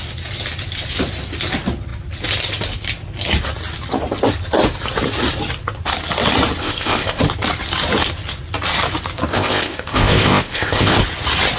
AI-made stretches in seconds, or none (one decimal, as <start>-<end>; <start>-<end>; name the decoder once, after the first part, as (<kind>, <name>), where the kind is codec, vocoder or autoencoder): 6.6-7.2 (codec, ZipCodec); 9.3-11.0